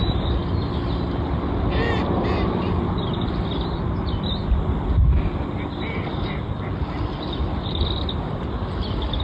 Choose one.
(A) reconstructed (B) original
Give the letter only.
B